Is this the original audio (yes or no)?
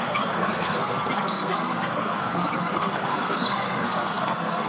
no